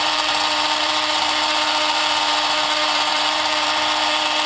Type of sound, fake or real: fake